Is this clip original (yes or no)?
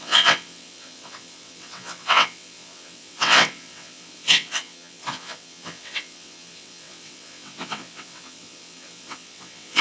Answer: no